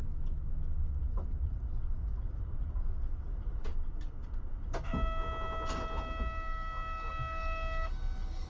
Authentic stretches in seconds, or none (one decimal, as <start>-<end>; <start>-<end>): 0.0-1.0; 1.7-8.5